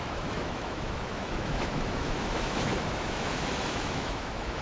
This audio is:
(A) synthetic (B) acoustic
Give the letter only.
A